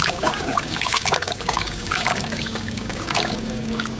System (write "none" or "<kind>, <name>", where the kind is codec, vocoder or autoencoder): codec, DAC